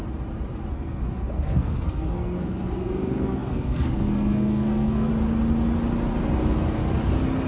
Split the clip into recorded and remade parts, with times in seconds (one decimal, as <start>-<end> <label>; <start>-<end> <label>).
0.0-0.7 recorded; 0.7-5.1 remade; 5.1-7.5 recorded